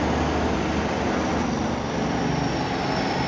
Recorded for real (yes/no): yes